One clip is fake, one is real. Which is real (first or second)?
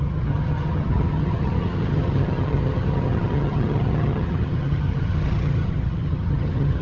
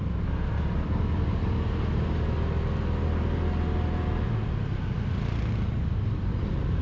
second